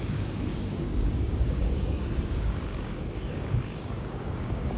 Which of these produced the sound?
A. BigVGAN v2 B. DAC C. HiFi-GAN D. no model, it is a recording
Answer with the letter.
B